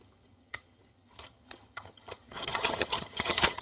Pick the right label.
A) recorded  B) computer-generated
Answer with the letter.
B